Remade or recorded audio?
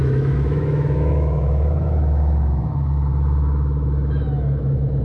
remade